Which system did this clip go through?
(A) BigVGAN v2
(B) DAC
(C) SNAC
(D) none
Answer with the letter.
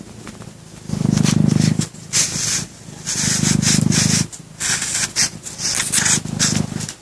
D